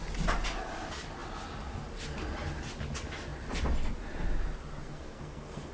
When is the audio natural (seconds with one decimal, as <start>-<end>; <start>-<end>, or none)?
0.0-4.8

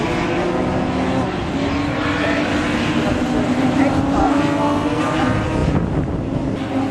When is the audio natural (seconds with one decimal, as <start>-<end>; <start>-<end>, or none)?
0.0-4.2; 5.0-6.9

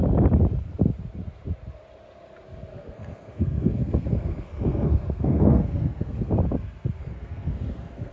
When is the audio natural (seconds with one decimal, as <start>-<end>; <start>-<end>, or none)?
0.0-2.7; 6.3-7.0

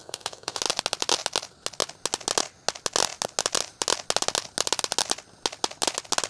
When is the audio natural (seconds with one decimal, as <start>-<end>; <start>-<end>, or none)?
0.6-6.3

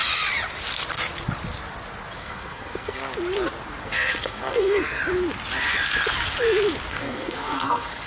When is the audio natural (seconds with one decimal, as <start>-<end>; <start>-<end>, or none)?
0.0-2.2; 3.0-3.8; 5.0-6.9

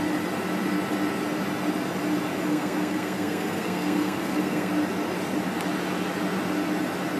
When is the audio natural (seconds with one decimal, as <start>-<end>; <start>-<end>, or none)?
0.0-2.4; 4.7-7.2